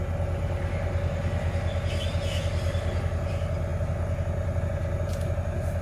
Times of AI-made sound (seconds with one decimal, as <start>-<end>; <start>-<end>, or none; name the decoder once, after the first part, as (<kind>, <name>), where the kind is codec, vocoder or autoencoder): none